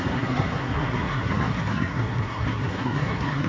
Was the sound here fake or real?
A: fake